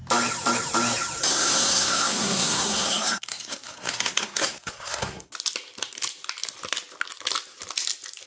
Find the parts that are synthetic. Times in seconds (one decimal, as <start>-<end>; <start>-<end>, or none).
1.3-5.3